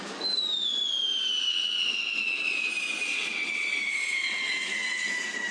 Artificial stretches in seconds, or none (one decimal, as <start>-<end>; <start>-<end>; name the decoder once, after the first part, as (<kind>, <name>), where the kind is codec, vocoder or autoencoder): 1.5-2.7 (vocoder, WaveNeXt); 3.1-5.1